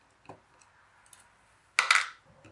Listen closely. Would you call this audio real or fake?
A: real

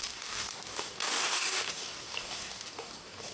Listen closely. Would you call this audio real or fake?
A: fake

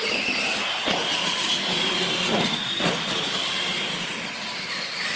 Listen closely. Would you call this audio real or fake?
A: real